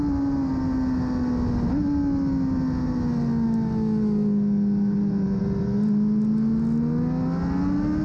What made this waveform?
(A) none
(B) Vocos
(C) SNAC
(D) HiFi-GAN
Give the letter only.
A